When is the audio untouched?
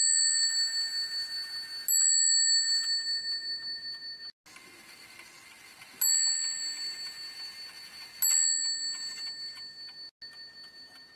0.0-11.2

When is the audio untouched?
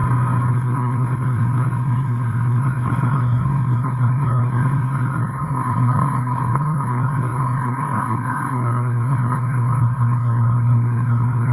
0.0-0.5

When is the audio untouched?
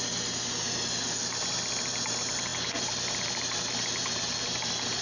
0.0-5.0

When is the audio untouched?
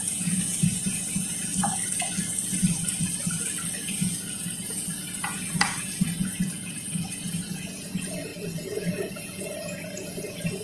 1.5-4.0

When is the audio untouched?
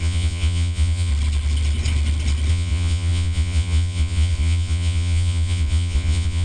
1.1-2.5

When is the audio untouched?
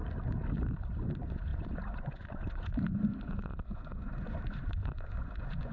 0.0-1.0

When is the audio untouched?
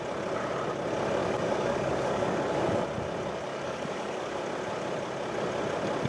0.0-1.2; 2.8-3.5; 4.4-6.1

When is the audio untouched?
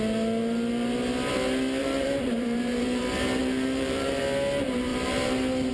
0.0-1.8; 3.0-3.4; 4.2-4.9